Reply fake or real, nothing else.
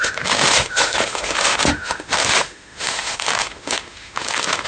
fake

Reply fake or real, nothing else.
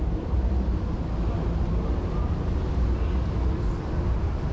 real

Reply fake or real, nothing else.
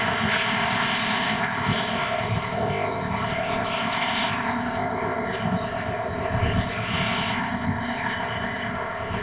fake